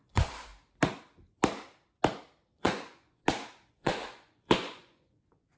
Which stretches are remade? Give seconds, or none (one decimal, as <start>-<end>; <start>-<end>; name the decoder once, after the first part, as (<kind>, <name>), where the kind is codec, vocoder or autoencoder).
0.0-0.5 (vocoder, Vocos); 2.6-3.2; 3.7-5.6